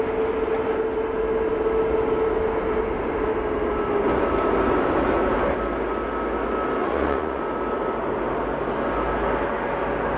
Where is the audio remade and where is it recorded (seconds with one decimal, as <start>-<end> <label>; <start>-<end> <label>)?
0.0-6.8 recorded; 6.8-7.4 remade; 7.4-10.2 recorded